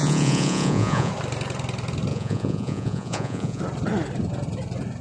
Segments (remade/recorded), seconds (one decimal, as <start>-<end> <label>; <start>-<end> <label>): 0.0-1.1 remade; 1.1-2.1 recorded; 2.1-3.6 remade; 3.6-5.0 recorded